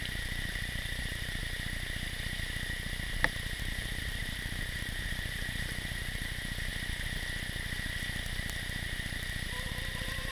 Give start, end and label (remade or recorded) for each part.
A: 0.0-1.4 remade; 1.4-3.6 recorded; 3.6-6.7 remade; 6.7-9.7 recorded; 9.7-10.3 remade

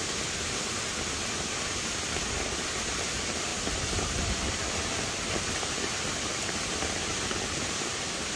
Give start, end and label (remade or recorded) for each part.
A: 0.0-3.5 recorded; 3.5-4.5 remade; 4.5-8.4 recorded

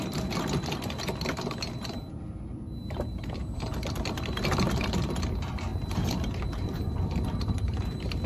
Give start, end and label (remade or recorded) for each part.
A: 0.0-2.8 recorded; 2.8-3.4 remade; 3.4-5.7 recorded; 5.7-7.8 remade; 7.8-8.3 recorded

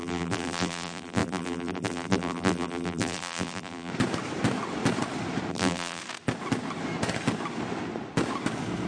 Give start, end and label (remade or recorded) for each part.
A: 0.0-3.9 remade; 3.9-5.5 recorded; 5.5-6.0 remade; 6.0-8.9 recorded

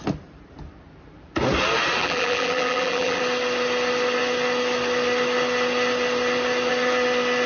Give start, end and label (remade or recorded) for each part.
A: 0.0-2.0 recorded; 2.0-3.2 remade; 3.2-7.5 recorded

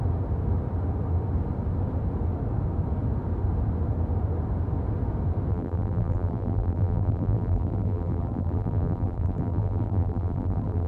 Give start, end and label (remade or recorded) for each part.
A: 0.0-5.5 recorded; 5.5-10.9 remade